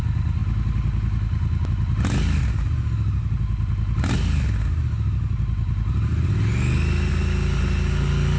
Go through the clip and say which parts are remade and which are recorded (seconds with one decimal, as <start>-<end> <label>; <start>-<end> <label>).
0.0-8.4 recorded